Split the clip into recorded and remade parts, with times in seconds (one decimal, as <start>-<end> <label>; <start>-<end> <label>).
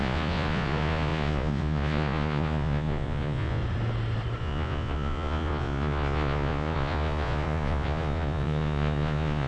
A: 0.0-3.6 remade; 3.6-4.4 recorded; 4.4-9.5 remade